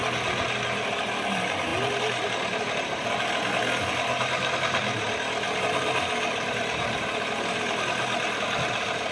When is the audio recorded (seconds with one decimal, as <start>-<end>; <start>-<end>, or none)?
0.0-9.1